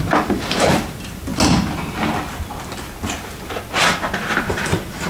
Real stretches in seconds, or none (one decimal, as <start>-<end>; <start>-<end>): 1.3-4.4